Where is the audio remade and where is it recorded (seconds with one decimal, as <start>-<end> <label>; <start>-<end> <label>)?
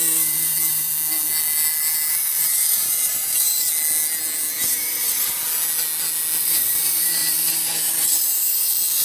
0.0-0.9 remade; 0.9-2.1 recorded; 2.1-3.7 remade; 3.7-4.7 recorded; 4.7-5.4 remade; 5.4-6.4 recorded; 6.4-9.0 remade